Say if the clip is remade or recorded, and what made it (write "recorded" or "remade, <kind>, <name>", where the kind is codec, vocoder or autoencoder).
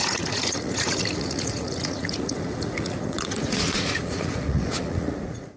remade, vocoder, Vocos